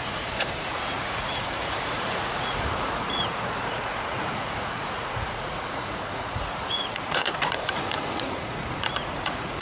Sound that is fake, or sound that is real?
fake